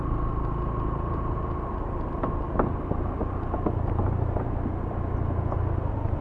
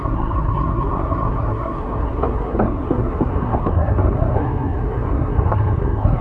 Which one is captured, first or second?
first